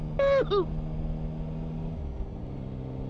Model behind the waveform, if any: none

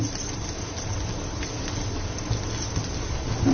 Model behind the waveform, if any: none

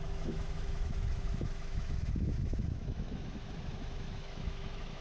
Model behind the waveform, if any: autoencoder, DAC-VAE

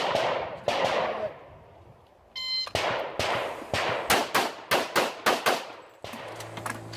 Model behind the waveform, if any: none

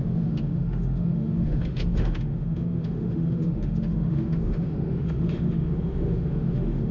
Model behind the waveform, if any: autoencoder, DAC-VAE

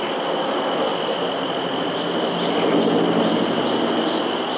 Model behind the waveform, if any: none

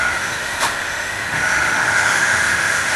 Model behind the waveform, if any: autoencoder, DAC-VAE